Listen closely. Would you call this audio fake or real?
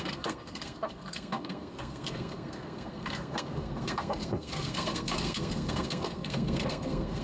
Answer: fake